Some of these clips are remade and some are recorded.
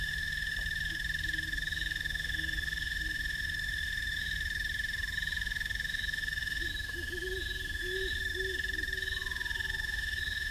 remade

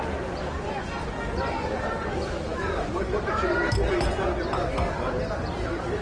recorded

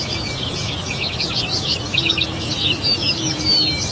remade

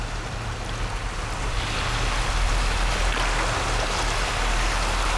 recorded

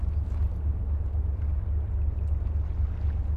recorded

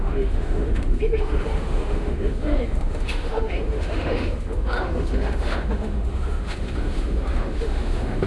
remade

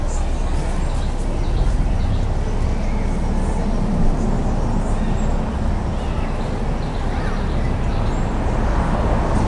recorded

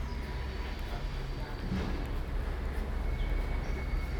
recorded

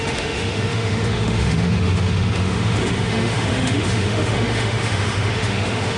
remade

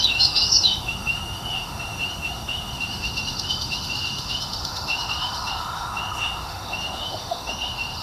remade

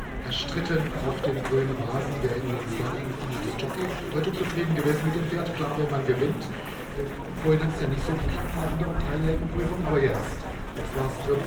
recorded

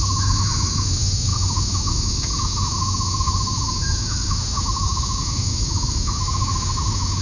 remade